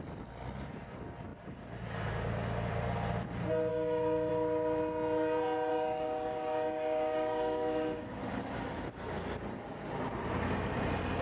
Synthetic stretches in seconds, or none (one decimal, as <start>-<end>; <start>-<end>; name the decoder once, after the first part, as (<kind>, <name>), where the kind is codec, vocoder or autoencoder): 3.7-4.3 (codec, DAC); 5.7-8.1